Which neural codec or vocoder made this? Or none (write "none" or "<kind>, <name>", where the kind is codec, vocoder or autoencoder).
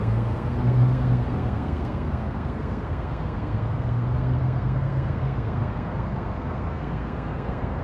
codec, SNAC